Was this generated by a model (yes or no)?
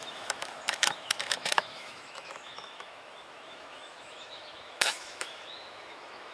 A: yes